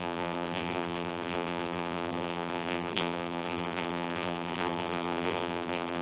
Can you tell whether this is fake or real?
fake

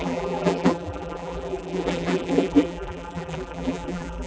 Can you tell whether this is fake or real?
fake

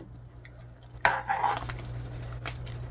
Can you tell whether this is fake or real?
real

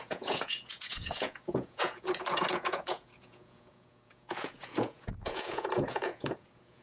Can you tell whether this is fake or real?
fake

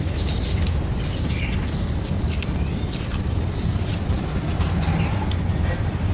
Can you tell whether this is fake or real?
real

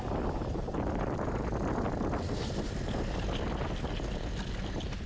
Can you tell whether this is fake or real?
real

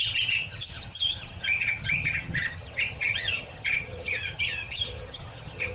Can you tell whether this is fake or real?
fake